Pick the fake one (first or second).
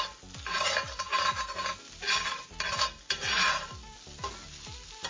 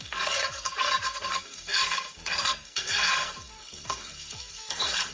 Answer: second